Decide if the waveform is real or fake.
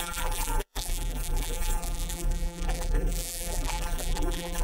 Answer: fake